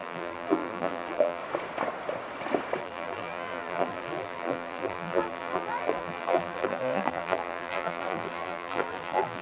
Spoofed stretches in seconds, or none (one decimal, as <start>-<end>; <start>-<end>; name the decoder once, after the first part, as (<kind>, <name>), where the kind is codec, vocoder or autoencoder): 0.0-1.4 (vocoder, BigVGAN v2); 2.8-9.4